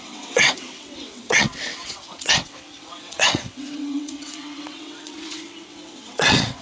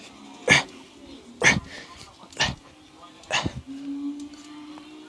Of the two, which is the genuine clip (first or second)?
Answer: second